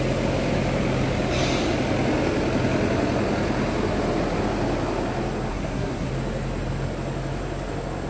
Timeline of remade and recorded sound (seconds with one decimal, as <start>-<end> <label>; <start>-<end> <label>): 0.0-5.5 recorded; 5.5-6.1 remade; 6.1-8.1 recorded